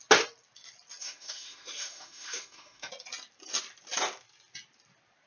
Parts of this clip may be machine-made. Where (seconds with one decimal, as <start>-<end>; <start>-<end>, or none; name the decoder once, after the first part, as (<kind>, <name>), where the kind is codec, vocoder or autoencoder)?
1.0-2.9 (autoencoder, DAC-VAE)